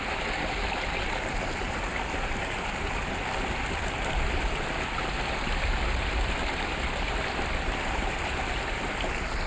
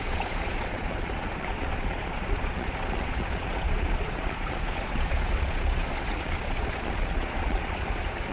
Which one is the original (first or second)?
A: first